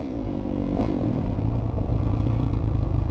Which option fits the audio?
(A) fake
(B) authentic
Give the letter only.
A